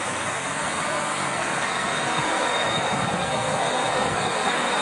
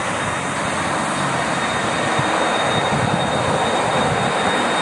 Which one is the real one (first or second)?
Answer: second